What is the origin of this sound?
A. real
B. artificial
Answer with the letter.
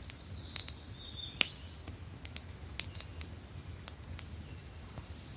A